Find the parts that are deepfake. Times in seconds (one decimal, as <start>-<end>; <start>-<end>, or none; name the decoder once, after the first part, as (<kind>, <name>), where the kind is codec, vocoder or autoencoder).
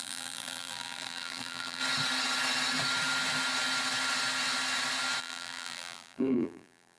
0.0-1.8 (vocoder, BigVGAN v2); 5.2-7.0